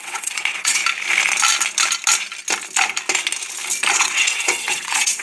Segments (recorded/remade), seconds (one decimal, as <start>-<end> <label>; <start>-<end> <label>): 0.0-0.8 remade; 0.8-3.9 recorded; 3.9-5.2 remade

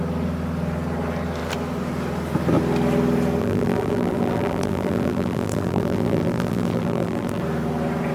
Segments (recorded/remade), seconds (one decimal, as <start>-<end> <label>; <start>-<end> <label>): 0.0-3.4 recorded; 3.4-7.4 remade; 7.4-8.1 recorded